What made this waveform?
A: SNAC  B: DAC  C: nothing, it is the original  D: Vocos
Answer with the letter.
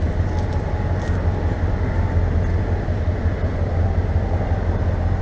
C